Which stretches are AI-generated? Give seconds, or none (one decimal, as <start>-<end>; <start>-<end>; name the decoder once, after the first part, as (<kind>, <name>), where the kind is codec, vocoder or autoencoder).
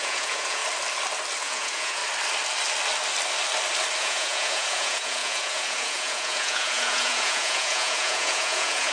0.0-0.6 (vocoder, Vocos); 1.4-2.0; 4.0-8.9